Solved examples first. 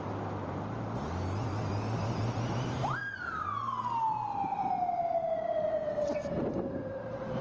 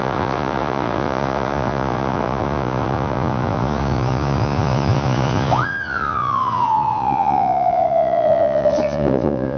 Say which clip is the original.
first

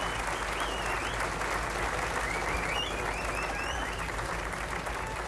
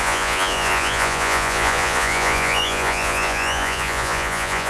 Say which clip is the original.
first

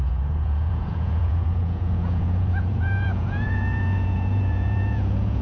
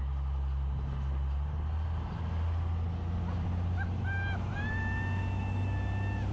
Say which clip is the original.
second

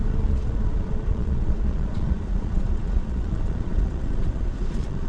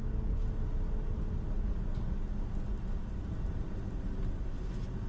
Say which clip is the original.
second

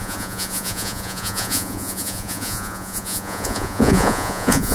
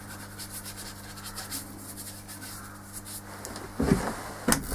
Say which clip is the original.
second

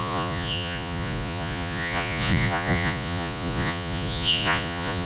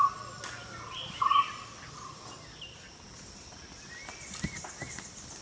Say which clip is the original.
second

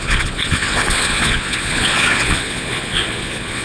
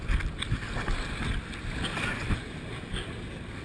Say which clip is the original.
second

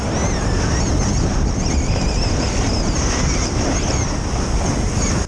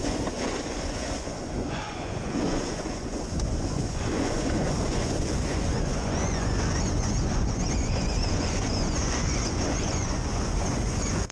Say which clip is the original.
first